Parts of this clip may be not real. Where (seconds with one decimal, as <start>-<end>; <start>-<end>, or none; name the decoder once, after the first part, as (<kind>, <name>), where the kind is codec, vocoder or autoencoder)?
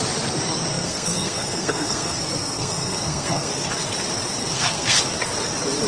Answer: 0.7-3.5 (codec, SNAC); 4.4-5.0